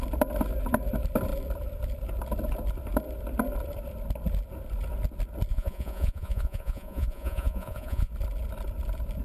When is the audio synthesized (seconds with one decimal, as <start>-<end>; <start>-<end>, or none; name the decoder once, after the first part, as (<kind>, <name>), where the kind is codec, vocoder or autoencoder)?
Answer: 5.5-8.1 (vocoder, Vocos)